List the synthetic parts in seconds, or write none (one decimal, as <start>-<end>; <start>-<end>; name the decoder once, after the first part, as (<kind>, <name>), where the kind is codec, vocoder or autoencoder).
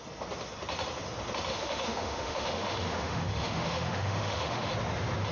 1.5-4.7 (autoencoder, DAC-VAE)